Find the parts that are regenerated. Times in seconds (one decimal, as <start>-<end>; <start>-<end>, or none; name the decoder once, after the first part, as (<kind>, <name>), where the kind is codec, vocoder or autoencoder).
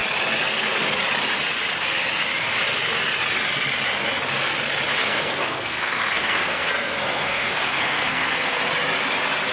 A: 5.0-8.6 (codec, SNAC)